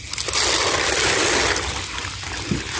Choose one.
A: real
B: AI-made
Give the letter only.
A